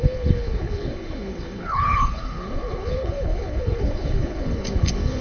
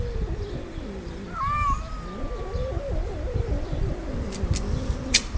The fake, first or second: first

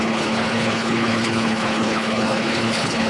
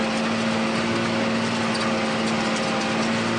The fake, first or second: first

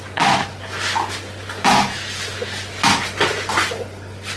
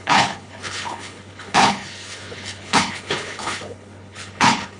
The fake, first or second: second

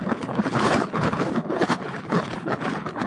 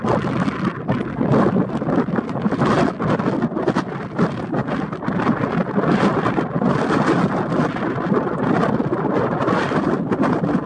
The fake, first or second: first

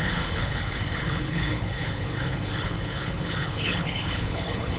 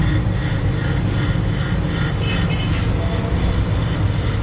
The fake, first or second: first